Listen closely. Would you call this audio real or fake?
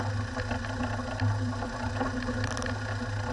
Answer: real